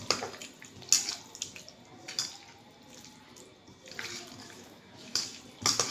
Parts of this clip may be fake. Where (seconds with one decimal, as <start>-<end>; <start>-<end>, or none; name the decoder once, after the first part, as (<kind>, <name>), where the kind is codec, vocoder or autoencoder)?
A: 4.4-5.4 (autoencoder, DAC-VAE)